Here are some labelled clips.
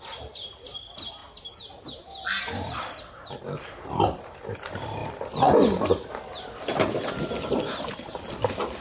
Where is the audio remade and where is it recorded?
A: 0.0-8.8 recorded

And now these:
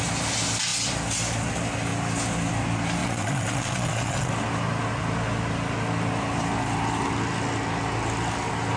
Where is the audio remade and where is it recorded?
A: 0.0-3.0 recorded; 3.0-4.3 remade; 4.3-8.8 recorded

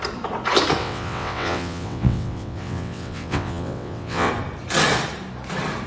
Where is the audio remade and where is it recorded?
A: 0.0-0.8 recorded; 0.8-4.3 remade; 4.3-5.9 recorded

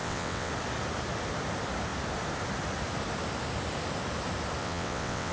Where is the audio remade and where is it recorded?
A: 0.0-0.5 remade; 0.5-4.6 recorded; 4.6-5.3 remade

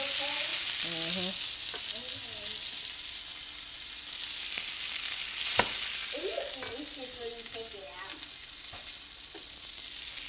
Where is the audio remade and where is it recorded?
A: 0.0-10.3 recorded

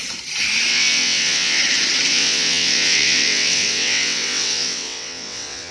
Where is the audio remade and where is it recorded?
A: 0.0-0.7 recorded; 0.7-1.6 remade; 1.6-2.1 recorded; 2.1-5.7 remade

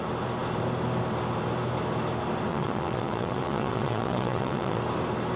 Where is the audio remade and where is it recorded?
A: 0.0-2.5 recorded; 2.5-4.8 remade; 4.8-5.4 recorded

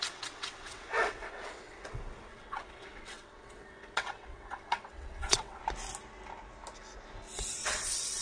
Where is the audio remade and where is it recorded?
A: 0.0-5.6 remade; 5.6-7.5 recorded; 7.5-8.2 remade